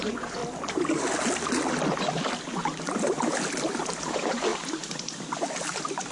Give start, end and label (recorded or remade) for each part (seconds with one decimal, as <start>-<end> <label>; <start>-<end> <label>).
0.0-0.4 remade; 0.4-4.1 recorded; 4.1-4.5 remade; 4.5-6.1 recorded